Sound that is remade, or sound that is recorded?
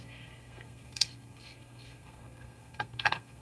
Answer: remade